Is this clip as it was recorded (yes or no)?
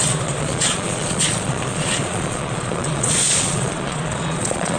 no